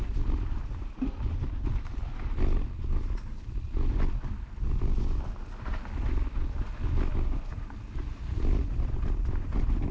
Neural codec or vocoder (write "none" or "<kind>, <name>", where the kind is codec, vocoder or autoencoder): none